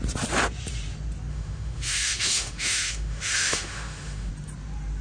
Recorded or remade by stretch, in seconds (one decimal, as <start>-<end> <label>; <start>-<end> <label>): 0.0-1.3 recorded; 1.3-4.3 remade; 4.3-5.0 recorded